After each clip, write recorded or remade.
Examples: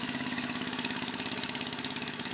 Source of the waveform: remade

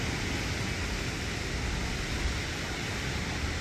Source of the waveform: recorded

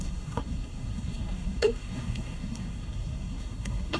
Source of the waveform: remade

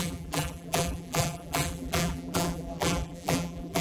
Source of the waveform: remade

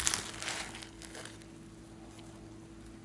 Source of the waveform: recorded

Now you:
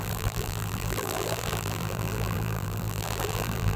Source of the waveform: remade